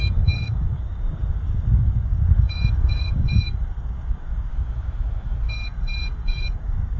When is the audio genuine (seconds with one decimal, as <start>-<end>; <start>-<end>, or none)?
4.5-5.5